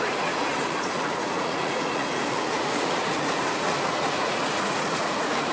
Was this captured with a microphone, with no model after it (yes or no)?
no